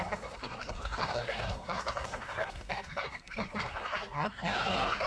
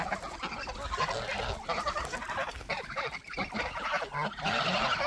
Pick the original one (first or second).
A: second